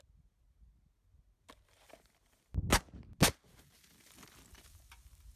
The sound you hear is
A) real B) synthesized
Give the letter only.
A